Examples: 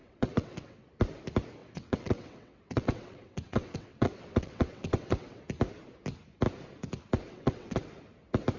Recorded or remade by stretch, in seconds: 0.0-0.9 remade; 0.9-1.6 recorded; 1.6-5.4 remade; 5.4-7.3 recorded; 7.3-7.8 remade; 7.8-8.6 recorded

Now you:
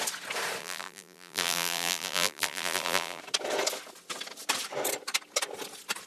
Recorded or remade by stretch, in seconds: 0.0-0.6 recorded; 0.6-3.2 remade; 3.2-6.1 recorded

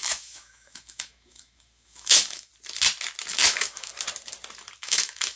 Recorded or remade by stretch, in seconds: 0.0-2.5 remade; 2.5-3.3 recorded; 3.3-3.9 remade; 3.9-4.8 recorded; 4.8-5.4 remade

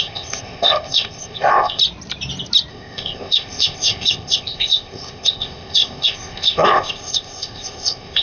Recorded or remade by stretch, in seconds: 0.0-1.8 remade; 1.8-2.7 recorded; 2.7-8.2 remade

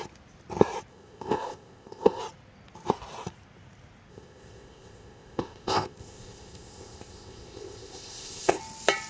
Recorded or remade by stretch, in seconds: 0.0-0.9 recorded; 0.9-2.2 remade; 2.2-4.1 recorded; 4.1-8.6 remade; 8.6-9.1 recorded

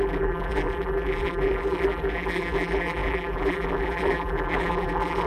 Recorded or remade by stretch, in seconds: 0.0-5.3 remade

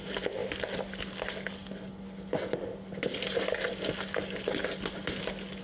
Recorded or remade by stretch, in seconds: 0.0-5.6 recorded

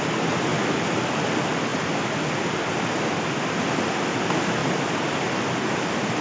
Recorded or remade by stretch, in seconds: 0.0-0.5 recorded; 0.5-1.0 remade; 1.0-4.6 recorded; 4.6-5.3 remade; 5.3-6.2 recorded